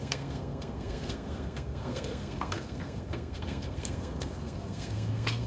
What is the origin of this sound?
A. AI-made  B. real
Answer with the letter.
A